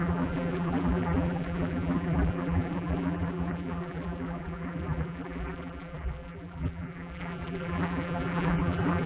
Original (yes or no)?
no